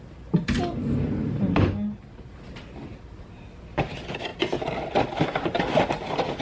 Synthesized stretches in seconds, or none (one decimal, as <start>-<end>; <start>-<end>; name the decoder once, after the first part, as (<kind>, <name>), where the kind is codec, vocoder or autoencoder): none